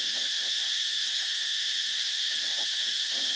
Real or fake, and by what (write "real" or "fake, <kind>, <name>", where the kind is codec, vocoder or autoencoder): fake, autoencoder, DAC-VAE